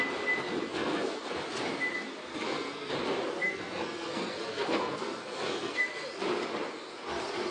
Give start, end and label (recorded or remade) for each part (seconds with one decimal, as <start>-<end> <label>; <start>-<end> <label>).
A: 0.0-0.7 recorded; 0.7-1.3 remade; 1.3-2.3 recorded; 2.3-2.9 remade; 2.9-3.4 recorded; 3.4-5.9 remade; 5.9-7.5 recorded